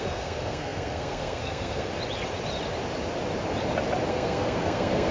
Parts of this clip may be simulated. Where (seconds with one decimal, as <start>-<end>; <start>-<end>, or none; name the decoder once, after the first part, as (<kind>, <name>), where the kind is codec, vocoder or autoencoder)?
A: 0.0-1.9 (codec, SNAC); 4.1-5.1